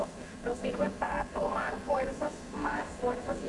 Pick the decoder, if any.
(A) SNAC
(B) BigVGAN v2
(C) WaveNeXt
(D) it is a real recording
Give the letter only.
A